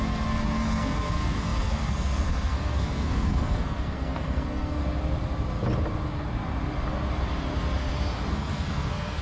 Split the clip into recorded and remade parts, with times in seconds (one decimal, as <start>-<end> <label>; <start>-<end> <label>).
0.0-4.8 remade; 4.8-8.3 recorded; 8.3-9.2 remade